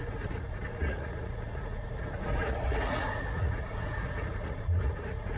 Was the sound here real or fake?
fake